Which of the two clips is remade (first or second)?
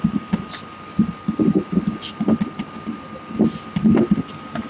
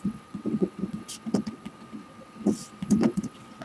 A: second